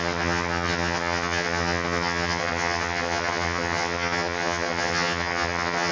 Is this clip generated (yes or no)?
yes